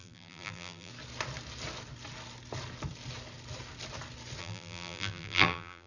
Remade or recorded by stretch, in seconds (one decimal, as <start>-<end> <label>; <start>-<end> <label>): 0.0-0.9 remade; 0.9-4.4 recorded; 4.4-5.9 remade